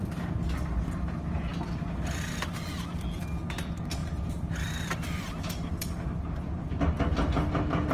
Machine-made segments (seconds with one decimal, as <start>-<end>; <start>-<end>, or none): 4.0-6.8